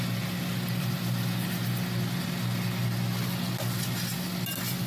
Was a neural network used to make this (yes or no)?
no